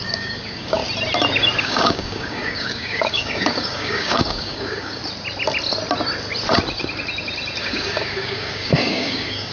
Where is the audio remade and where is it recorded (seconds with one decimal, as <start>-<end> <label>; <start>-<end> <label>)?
0.0-0.8 remade; 0.8-1.6 recorded; 1.6-5.0 remade; 5.0-7.6 recorded; 7.6-9.5 remade